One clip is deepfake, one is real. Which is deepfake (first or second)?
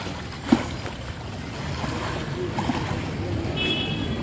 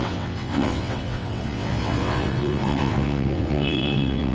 second